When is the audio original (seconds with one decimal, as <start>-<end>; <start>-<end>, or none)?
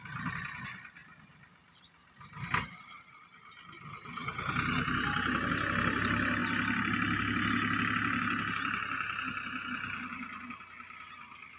0.0-11.6